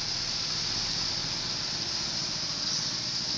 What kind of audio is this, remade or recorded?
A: recorded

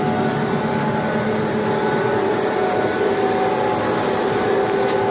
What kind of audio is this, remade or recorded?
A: recorded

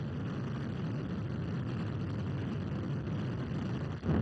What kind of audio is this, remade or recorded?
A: recorded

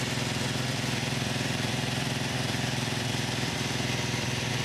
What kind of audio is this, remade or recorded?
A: remade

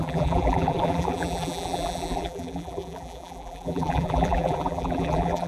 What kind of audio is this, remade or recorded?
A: remade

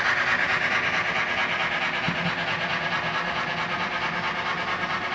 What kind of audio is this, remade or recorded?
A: recorded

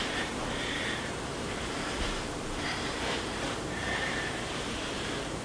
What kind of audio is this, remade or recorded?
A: remade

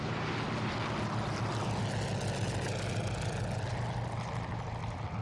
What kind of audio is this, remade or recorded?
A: recorded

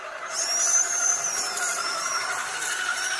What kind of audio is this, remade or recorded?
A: remade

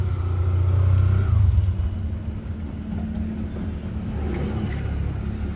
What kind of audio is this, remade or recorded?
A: recorded